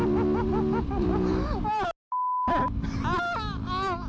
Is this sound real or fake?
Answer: real